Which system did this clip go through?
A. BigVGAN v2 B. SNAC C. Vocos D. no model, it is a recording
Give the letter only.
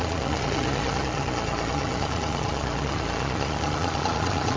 C